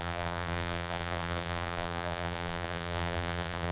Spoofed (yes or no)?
yes